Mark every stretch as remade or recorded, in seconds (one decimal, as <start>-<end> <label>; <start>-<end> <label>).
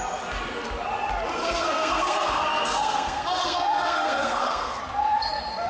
0.0-1.4 recorded; 1.4-4.8 remade; 4.8-5.7 recorded